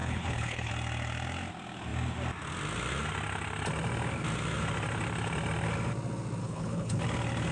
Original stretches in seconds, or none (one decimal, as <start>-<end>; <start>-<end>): 0.7-6.4; 7.0-7.5